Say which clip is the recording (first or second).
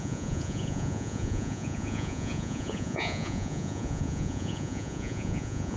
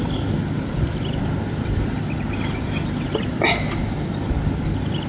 second